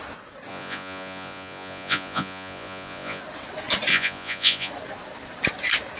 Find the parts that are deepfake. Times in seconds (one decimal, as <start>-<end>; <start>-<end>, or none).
0.5-3.2; 3.9-4.7